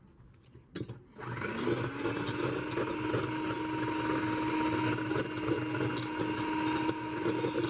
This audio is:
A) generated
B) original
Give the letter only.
B